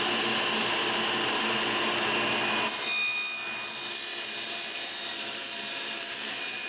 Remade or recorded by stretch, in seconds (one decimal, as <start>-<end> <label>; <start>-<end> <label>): 0.0-4.1 recorded; 4.1-6.7 remade